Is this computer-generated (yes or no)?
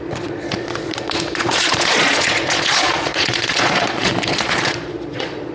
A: yes